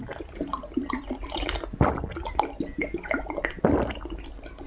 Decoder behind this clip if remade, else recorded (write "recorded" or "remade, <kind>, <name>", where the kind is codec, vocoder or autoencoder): recorded